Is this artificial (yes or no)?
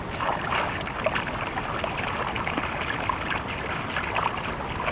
no